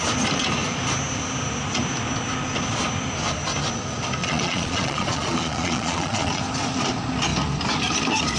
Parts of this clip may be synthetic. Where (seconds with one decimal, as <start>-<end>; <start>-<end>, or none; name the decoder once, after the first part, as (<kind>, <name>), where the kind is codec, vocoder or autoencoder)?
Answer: 4.2-6.4 (vocoder, Vocos)